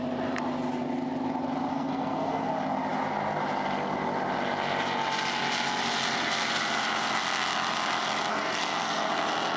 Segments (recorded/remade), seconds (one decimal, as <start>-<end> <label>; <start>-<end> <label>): 0.0-1.7 recorded; 1.7-2.5 remade; 2.5-8.3 recorded; 8.3-9.1 remade; 9.1-9.6 recorded